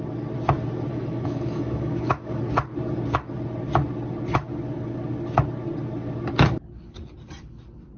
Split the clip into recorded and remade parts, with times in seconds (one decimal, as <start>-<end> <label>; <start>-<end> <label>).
0.0-0.9 recorded; 0.9-2.4 remade; 2.4-8.0 recorded